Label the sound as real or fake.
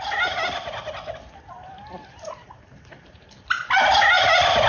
real